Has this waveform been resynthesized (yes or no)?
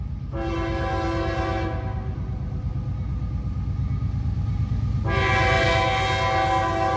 no